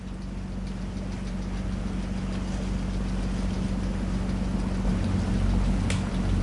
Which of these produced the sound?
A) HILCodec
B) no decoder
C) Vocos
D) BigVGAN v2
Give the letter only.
B